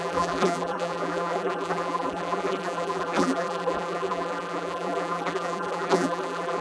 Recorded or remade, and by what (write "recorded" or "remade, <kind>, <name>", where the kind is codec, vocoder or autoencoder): remade, vocoder, BigVGAN v2